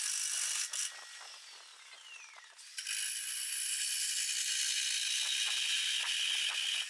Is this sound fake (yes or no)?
no